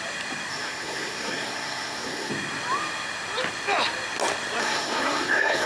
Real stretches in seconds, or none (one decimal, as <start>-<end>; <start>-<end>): 0.0-0.5; 2.3-4.6